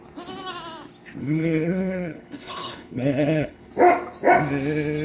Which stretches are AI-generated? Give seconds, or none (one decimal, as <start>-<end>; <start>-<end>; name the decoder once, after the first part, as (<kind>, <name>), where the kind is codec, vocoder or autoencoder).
1.2-3.7 (codec, HILCodec)